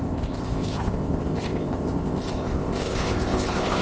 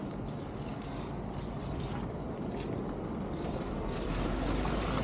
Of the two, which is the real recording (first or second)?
second